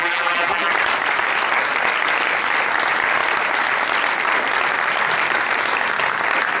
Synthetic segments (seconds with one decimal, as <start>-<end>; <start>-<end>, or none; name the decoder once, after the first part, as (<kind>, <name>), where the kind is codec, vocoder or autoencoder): 0.0-0.7 (vocoder, BigVGAN v2)